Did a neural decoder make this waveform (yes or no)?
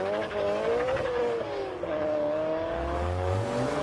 yes